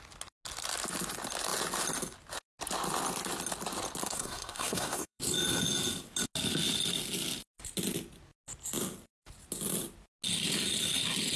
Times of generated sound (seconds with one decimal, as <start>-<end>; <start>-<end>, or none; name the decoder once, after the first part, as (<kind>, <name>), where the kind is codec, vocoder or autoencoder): 4.0-5.2 (codec, SNAC)